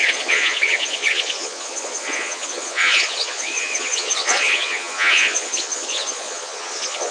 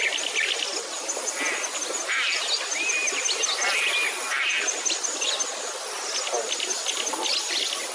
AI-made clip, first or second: first